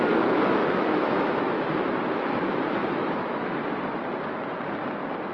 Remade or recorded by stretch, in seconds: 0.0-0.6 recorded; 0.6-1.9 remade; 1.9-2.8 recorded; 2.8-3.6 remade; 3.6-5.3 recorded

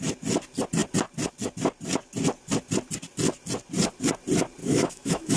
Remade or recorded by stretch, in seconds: 0.0-4.6 recorded; 4.6-5.4 remade

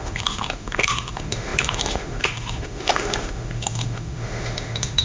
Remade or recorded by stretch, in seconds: 0.0-5.0 remade

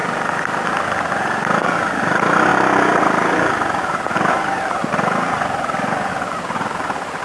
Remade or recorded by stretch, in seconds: 0.0-7.2 recorded

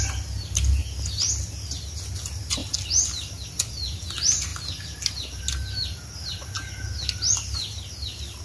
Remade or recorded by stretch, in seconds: 0.0-8.4 recorded